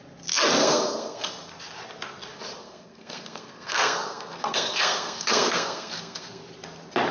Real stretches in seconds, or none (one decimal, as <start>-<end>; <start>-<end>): 0.0-0.6; 1.3-2.6; 6.4-7.1